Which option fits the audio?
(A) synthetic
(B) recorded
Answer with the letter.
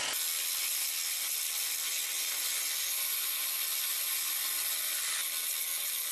B